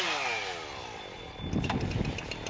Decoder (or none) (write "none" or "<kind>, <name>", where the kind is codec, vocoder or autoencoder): none